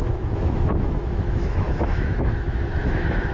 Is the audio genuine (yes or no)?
no